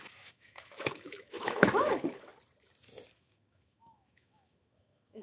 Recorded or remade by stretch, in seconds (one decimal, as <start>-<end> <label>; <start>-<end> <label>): 0.0-2.3 remade; 2.3-3.2 recorded; 3.2-5.2 remade